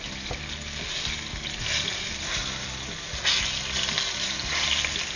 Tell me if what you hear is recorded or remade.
recorded